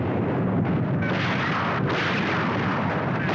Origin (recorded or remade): recorded